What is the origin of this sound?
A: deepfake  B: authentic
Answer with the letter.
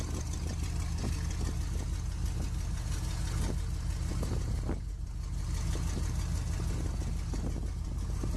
B